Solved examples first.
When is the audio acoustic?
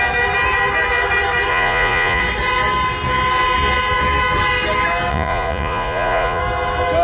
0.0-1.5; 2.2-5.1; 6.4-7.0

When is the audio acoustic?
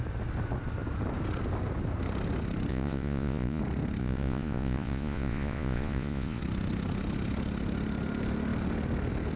0.0-2.7; 3.6-4.0; 6.4-9.4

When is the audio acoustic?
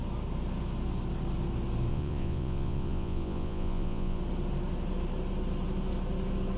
0.0-1.9; 4.2-6.6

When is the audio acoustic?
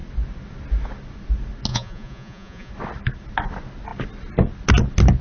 0.0-1.7; 2.7-5.2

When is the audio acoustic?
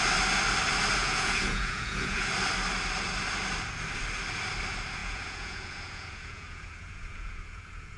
0.0-1.0; 2.3-5.0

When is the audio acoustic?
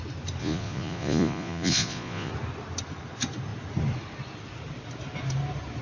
0.0-0.4; 2.3-5.8